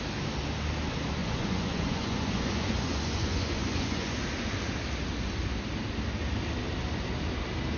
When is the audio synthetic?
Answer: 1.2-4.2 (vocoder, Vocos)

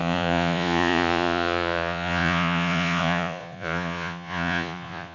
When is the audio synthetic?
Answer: 0.0-5.1 (vocoder, Vocos)

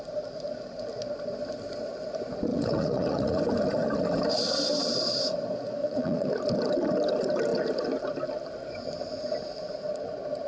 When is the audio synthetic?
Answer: 2.5-3.4 (vocoder, Vocos); 5.8-6.3

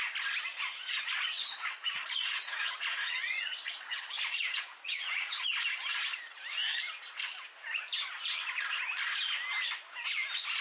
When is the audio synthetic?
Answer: 0.5-5.4 (vocoder, Vocos)

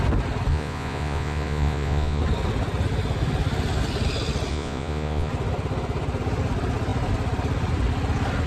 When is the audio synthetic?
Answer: 0.5-2.2 (vocoder, Vocos); 4.5-5.3

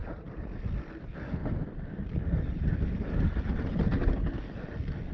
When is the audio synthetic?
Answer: 0.0-0.6 (vocoder, Vocos)

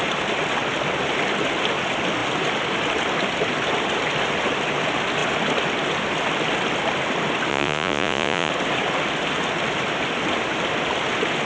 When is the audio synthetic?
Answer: 7.5-8.5 (vocoder, Vocos)